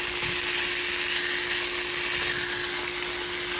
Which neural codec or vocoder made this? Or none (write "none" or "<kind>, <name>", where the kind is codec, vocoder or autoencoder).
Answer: none